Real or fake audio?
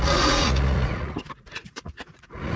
fake